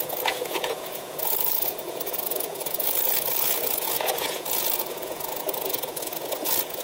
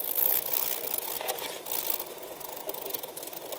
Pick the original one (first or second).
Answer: second